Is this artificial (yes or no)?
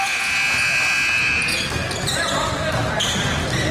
no